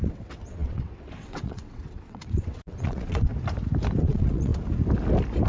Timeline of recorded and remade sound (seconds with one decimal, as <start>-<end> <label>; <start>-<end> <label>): 0.0-3.3 remade; 3.3-4.0 recorded; 4.0-4.5 remade; 4.5-5.5 recorded